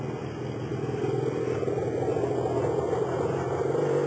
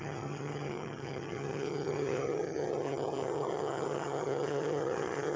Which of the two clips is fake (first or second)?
second